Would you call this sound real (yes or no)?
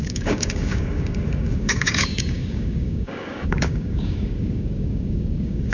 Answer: no